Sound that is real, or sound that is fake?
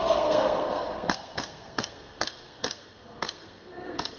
fake